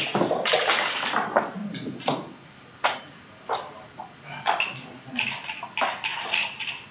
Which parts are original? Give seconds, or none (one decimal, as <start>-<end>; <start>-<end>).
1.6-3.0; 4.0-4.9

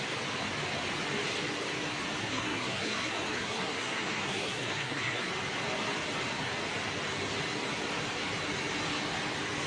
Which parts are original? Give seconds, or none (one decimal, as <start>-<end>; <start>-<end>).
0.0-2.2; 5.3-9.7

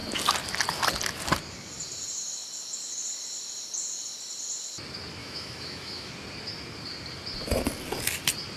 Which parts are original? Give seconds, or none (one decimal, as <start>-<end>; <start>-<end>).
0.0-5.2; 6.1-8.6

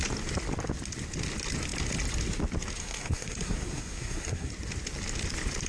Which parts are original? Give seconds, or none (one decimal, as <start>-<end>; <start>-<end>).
0.0-2.8; 4.5-5.7

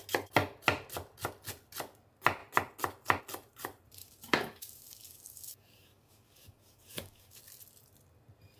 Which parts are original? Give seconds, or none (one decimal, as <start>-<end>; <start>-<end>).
0.0-4.0; 7.4-8.6